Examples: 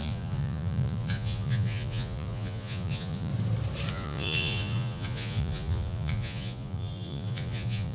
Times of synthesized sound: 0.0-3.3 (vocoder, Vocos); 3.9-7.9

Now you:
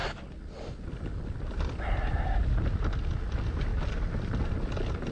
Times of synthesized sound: none

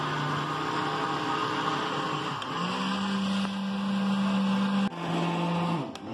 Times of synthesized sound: none

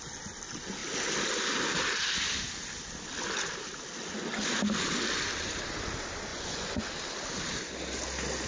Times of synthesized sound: 6.3-6.8 (vocoder, Vocos)

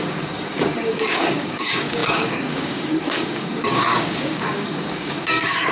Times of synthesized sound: 0.0-5.7 (codec, DAC)